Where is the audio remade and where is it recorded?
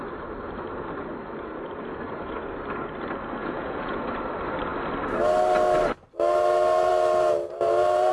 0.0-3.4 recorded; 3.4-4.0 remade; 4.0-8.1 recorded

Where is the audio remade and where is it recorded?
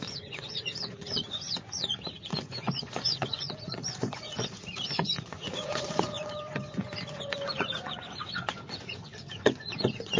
0.0-10.2 remade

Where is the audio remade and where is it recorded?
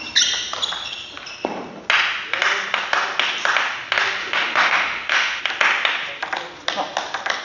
0.0-4.2 recorded; 4.2-5.4 remade; 5.4-7.4 recorded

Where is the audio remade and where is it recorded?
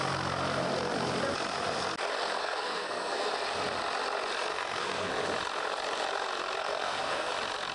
0.0-2.4 recorded; 2.4-3.3 remade; 3.3-4.5 recorded; 4.5-5.1 remade; 5.1-6.6 recorded; 6.6-7.3 remade; 7.3-7.7 recorded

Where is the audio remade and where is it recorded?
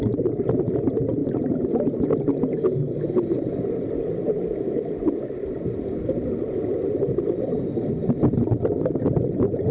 0.0-9.7 recorded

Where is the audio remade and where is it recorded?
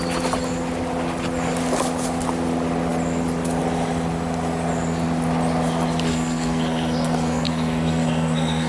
0.0-6.1 recorded; 6.1-8.7 remade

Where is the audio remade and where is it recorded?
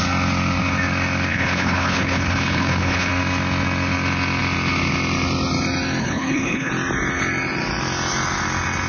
0.0-1.3 recorded; 1.3-3.1 remade; 3.1-6.0 recorded; 6.0-6.7 remade; 6.7-8.9 recorded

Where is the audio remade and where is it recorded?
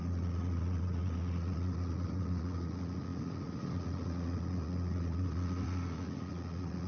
0.0-6.9 remade